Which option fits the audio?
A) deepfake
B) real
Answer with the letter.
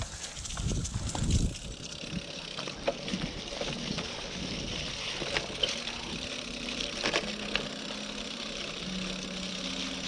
B